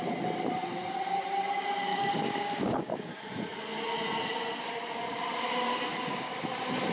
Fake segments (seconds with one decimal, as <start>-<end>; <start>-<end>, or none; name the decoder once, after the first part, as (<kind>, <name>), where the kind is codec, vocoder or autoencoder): 1.9-3.1 (codec, DAC); 5.9-6.4

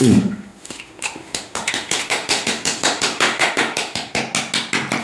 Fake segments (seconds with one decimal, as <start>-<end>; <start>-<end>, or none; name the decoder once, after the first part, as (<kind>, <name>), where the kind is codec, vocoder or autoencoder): 0.0-4.2 (autoencoder, DAC-VAE)